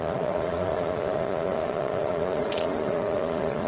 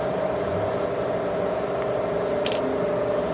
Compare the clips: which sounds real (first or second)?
second